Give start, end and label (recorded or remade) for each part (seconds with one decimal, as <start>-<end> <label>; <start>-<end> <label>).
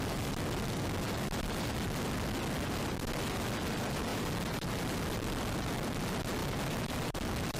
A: 0.0-4.1 recorded; 4.1-4.7 remade; 4.7-7.6 recorded